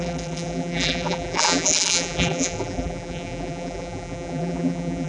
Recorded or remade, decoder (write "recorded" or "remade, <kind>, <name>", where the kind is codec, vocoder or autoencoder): remade, vocoder, BigVGAN v2